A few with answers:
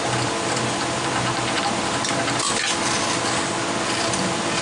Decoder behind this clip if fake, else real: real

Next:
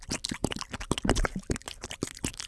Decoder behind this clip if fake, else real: real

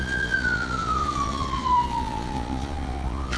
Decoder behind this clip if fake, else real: fake, vocoder, Vocos